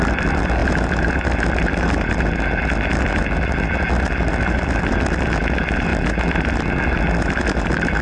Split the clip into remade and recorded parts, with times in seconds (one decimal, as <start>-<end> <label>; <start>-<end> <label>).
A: 0.0-8.0 recorded